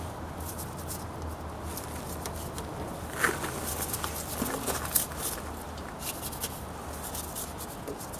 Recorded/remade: recorded